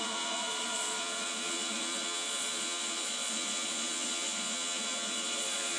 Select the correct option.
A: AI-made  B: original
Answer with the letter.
A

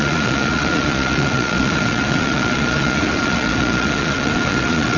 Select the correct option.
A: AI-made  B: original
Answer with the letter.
A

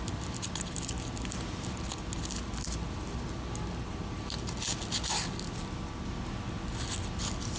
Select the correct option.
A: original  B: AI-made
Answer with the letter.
A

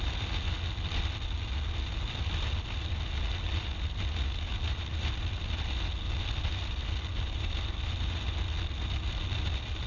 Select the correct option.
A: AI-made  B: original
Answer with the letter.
B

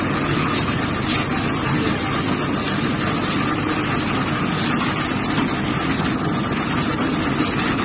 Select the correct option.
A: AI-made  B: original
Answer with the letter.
B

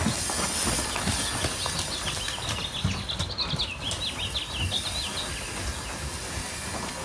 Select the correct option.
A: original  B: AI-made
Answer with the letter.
A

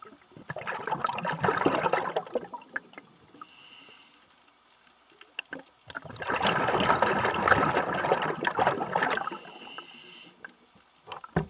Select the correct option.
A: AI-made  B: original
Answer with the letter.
B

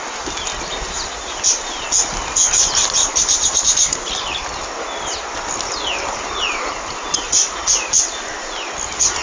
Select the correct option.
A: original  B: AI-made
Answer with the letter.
A